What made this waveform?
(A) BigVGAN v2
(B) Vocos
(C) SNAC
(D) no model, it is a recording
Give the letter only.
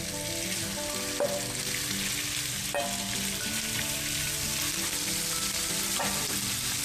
D